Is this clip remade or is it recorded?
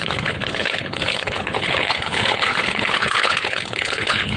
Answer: remade